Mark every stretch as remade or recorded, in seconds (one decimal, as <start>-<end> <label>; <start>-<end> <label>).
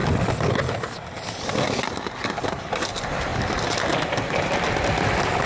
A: 0.0-2.4 recorded; 2.4-3.3 remade; 3.3-5.5 recorded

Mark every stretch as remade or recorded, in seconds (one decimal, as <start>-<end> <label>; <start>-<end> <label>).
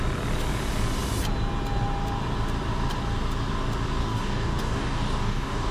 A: 0.0-4.0 recorded; 4.0-5.7 remade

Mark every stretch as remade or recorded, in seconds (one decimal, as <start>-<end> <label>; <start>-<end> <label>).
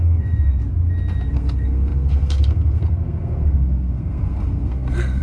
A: 0.0-0.6 remade; 0.6-1.3 recorded; 1.3-5.2 remade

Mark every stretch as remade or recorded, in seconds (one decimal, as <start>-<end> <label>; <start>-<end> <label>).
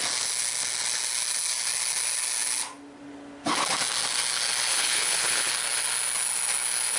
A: 0.0-4.7 recorded; 4.7-5.5 remade; 5.5-7.0 recorded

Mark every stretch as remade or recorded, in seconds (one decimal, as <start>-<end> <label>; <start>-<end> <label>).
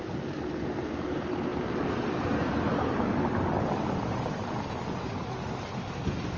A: 0.0-1.5 recorded; 1.5-5.0 remade; 5.0-6.4 recorded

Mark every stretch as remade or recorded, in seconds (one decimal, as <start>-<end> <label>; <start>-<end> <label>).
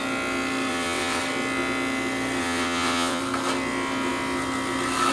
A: 0.0-0.7 recorded; 0.7-1.2 remade; 1.2-2.4 recorded; 2.4-3.2 remade; 3.2-5.1 recorded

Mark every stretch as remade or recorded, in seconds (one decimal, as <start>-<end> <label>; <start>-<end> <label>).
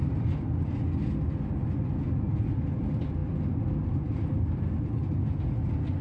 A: 0.0-6.0 recorded